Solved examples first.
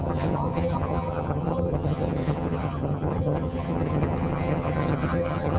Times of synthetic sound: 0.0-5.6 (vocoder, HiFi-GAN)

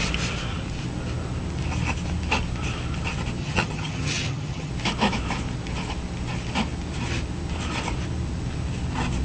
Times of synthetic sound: 3.4-4.7 (vocoder, HiFi-GAN)

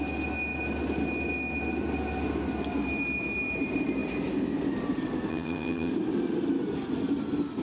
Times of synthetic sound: 5.3-5.9 (vocoder, HiFi-GAN)

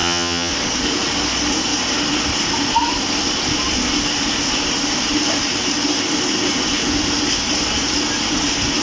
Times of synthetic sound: 0.0-0.5 (vocoder, HiFi-GAN)